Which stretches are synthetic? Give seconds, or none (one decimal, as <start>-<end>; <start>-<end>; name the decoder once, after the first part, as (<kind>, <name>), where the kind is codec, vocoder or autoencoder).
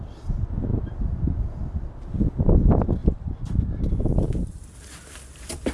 0.7-1.6 (vocoder, BigVGAN v2); 3.0-3.8